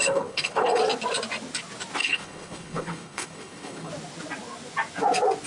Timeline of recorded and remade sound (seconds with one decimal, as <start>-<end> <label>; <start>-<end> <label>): 0.0-0.8 remade; 0.8-2.0 recorded; 2.0-3.9 remade; 3.9-5.5 recorded